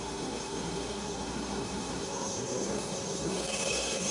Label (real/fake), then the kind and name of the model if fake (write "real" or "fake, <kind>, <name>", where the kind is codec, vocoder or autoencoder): fake, codec, SNAC